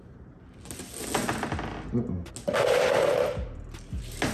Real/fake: real